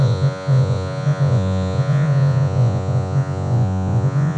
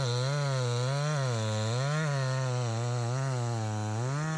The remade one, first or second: first